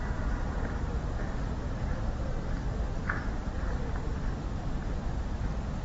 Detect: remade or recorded recorded